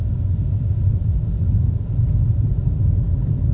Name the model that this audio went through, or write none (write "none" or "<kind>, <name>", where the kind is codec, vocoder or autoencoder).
none